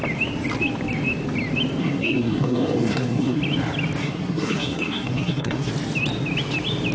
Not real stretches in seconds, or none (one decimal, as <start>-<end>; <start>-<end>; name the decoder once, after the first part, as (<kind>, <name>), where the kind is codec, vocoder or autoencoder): 1.8-3.4 (codec, SNAC); 4.0-5.7